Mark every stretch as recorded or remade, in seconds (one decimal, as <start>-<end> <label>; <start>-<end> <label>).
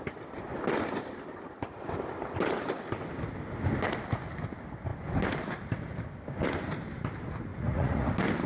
0.0-7.5 recorded; 7.5-8.1 remade; 8.1-8.5 recorded